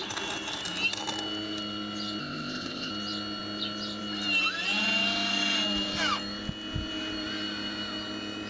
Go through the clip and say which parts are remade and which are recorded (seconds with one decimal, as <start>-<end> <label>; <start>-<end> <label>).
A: 0.0-2.2 recorded; 2.2-2.9 remade; 2.9-8.5 recorded